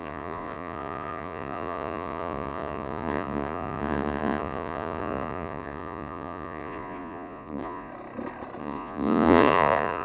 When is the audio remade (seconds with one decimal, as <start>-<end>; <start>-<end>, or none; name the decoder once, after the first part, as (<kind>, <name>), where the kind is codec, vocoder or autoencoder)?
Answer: 0.0-7.9 (vocoder, Vocos); 8.6-10.0